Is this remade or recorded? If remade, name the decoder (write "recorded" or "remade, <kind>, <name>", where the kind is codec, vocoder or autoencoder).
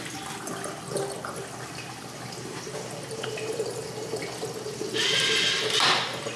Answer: recorded